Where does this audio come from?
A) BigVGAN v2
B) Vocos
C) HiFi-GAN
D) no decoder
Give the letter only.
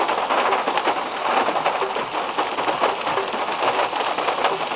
D